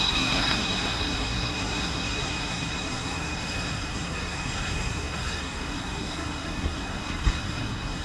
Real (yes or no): no